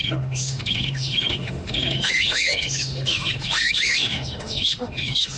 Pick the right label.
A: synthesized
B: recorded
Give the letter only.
A